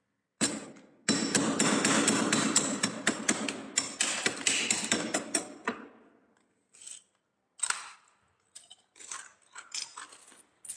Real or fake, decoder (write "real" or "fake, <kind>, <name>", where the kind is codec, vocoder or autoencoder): real